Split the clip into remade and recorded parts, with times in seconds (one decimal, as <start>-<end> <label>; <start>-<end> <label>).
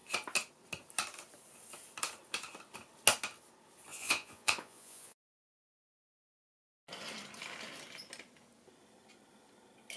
0.0-3.9 recorded; 3.9-5.3 remade; 5.3-10.0 recorded